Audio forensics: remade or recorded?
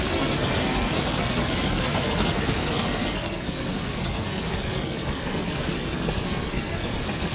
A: remade